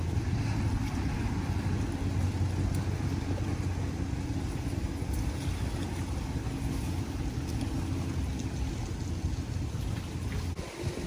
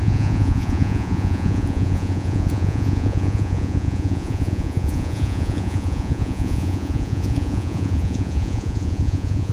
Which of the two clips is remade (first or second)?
second